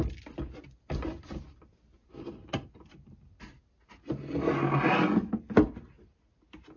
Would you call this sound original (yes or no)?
yes